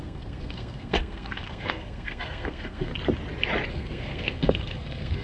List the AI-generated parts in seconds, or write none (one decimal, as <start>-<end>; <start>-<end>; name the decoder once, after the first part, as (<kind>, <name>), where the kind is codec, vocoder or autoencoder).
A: 0.0-2.9 (codec, SNAC); 3.7-5.2